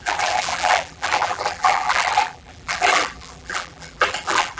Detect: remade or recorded remade